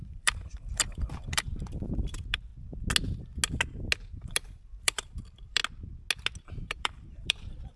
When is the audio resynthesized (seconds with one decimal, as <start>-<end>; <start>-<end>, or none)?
0.0-2.5; 4.1-5.6; 6.5-7.8